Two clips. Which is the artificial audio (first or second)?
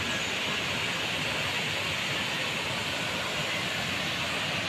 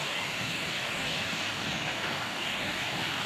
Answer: second